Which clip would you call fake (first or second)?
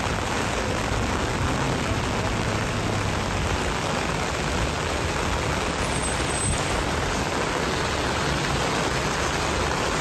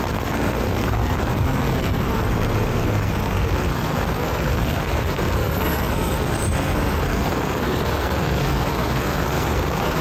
second